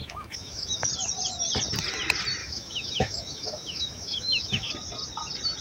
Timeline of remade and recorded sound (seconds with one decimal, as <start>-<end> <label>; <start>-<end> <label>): 0.0-0.9 remade; 0.9-2.4 recorded; 2.4-4.7 remade; 4.7-5.6 recorded